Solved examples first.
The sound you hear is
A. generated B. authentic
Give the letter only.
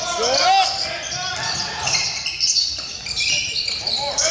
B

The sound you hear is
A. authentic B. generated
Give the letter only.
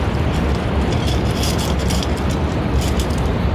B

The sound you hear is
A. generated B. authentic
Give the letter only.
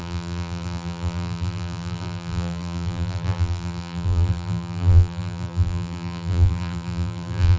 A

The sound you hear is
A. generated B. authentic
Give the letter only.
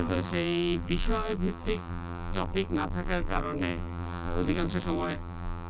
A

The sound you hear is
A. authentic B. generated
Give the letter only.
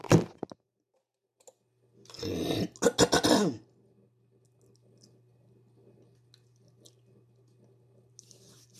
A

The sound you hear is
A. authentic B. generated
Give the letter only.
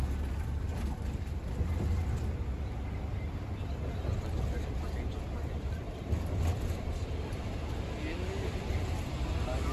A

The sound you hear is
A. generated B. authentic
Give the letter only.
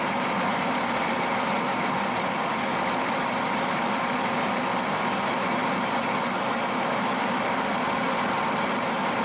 A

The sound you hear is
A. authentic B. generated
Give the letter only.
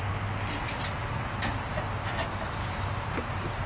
A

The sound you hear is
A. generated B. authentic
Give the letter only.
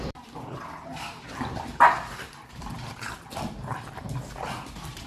A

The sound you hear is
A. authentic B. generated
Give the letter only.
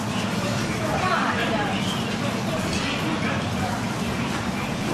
B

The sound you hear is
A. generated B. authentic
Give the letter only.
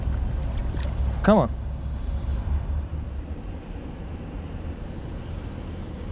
A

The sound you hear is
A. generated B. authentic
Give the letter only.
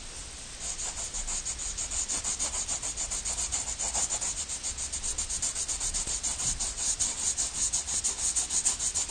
B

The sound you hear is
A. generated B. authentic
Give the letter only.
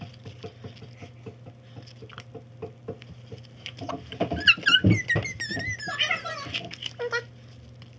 B